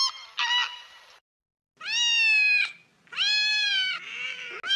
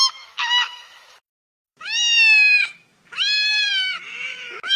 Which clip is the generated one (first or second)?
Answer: second